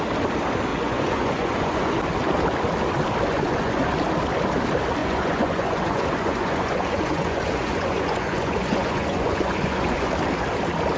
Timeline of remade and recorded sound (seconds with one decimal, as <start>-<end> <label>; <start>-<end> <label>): 0.0-0.7 recorded; 0.7-1.9 remade; 1.9-3.3 recorded; 3.3-3.8 remade; 3.8-5.0 recorded; 5.0-10.1 remade; 10.1-11.0 recorded